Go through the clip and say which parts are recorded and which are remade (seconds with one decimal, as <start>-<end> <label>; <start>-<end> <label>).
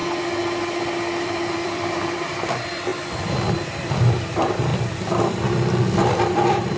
0.0-1.2 recorded; 1.2-6.8 remade